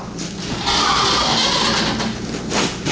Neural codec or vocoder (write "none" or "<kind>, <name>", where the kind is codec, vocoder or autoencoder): none